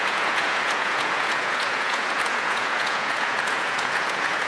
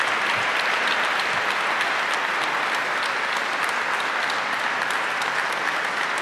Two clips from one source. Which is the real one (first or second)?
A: second